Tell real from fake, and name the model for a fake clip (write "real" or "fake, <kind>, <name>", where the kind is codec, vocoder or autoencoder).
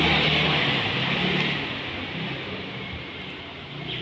real